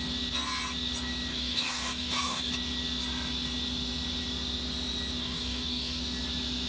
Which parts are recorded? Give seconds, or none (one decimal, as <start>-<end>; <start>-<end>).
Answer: 0.0-1.3; 2.5-5.2; 6.0-6.7